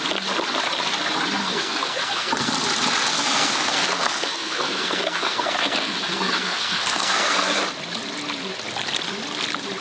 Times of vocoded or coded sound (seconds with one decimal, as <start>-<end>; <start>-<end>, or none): 1.4-2.5; 3.1-7.6